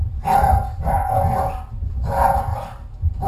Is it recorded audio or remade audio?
recorded